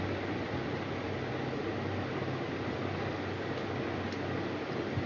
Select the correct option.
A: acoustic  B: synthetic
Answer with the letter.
A